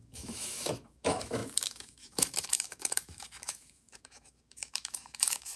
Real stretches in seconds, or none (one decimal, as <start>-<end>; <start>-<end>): none